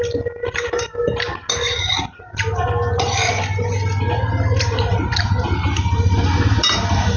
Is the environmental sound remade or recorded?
recorded